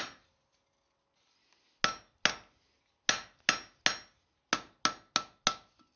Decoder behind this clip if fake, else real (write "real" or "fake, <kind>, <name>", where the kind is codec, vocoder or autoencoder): real